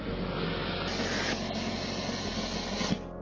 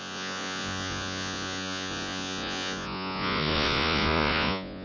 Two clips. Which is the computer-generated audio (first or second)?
second